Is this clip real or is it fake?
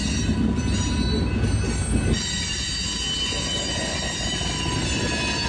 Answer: real